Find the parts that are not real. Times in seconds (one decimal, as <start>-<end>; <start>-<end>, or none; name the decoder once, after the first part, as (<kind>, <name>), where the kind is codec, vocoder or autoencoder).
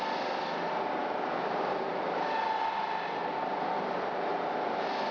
1.0-2.8 (vocoder, BigVGAN v2); 3.2-4.5